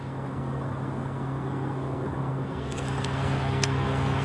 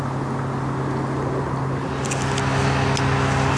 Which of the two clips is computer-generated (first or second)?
first